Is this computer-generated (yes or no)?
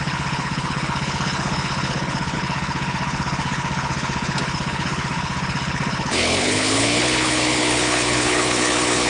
yes